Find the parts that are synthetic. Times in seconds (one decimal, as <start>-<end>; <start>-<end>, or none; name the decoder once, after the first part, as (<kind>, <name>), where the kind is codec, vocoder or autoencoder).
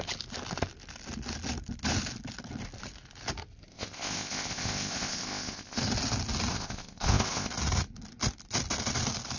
3.7-5.8 (codec, ZipCodec); 6.5-7.5